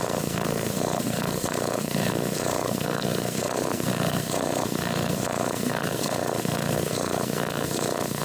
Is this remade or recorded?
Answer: remade